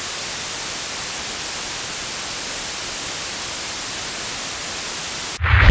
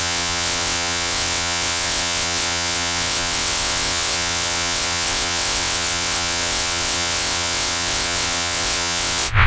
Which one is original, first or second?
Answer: first